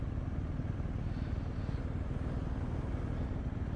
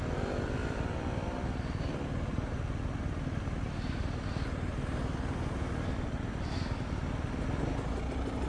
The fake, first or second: second